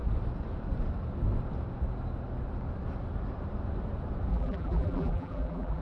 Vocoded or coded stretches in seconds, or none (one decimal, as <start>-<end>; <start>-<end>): 4.3-5.8